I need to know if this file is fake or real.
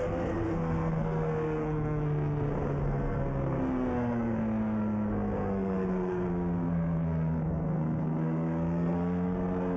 fake